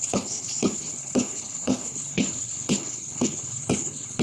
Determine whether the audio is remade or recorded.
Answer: remade